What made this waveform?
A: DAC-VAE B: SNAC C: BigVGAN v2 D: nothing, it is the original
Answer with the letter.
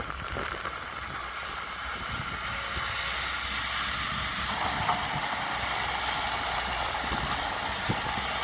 D